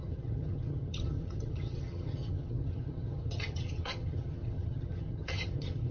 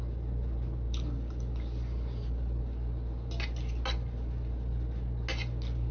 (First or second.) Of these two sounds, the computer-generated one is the first